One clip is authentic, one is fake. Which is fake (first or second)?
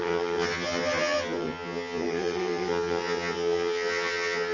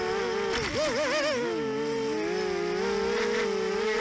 first